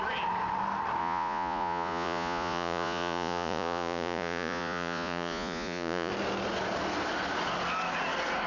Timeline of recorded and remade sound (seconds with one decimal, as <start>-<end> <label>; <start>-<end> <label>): 0.0-1.0 recorded; 1.0-6.1 remade; 6.1-8.5 recorded